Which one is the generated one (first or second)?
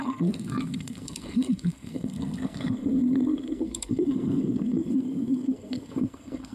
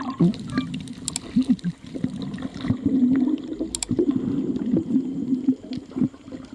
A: first